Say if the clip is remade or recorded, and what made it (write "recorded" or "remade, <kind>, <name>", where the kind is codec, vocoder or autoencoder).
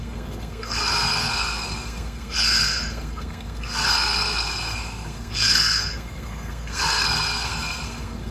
remade, codec, SNAC